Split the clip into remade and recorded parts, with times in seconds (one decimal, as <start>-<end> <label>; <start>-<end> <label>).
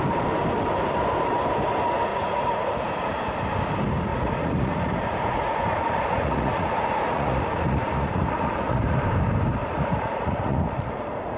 0.0-2.1 recorded; 2.1-3.2 remade; 3.2-4.1 recorded; 4.1-9.0 remade; 9.0-9.6 recorded; 9.6-11.4 remade